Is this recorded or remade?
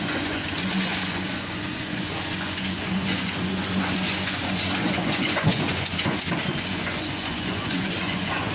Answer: remade